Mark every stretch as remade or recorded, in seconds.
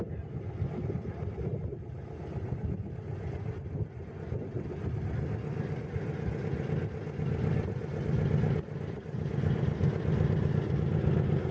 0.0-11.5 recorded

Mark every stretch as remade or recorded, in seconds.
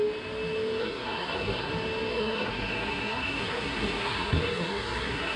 0.0-0.8 recorded; 0.8-1.7 remade; 1.7-2.1 recorded; 2.1-5.4 remade